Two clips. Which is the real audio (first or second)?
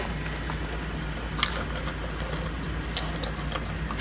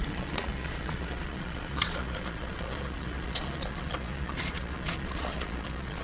first